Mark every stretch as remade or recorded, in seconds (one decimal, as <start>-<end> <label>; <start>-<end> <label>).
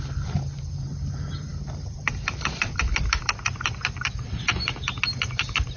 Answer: 0.0-5.8 remade